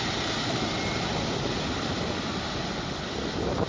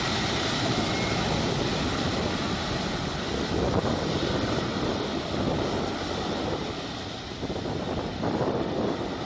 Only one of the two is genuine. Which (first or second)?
first